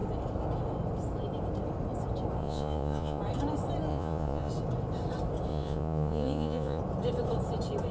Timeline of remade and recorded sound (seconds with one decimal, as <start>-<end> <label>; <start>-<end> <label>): 0.0-2.4 recorded; 2.4-3.2 remade; 3.2-3.9 recorded; 3.9-4.5 remade; 4.5-5.5 recorded; 5.5-6.8 remade; 6.8-7.9 recorded